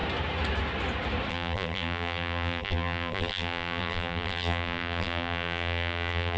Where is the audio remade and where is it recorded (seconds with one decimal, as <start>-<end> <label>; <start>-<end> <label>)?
0.0-1.3 recorded; 1.3-6.4 remade